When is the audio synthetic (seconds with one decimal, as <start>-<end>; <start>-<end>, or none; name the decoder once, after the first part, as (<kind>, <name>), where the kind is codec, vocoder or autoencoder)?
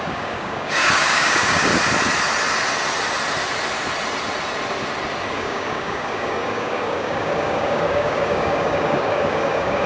0.0-1.7 (codec, DAC); 5.3-9.9